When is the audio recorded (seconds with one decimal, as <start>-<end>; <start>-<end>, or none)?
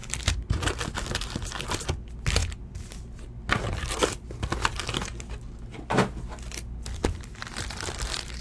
0.0-8.4